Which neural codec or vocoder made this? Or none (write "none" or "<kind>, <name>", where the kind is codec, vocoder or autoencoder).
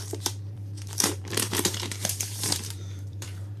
vocoder, BigVGAN v2